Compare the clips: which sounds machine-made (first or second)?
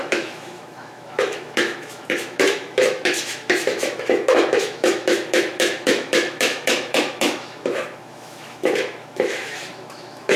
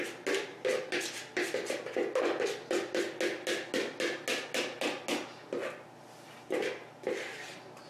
first